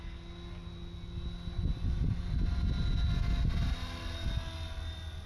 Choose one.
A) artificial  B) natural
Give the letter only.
B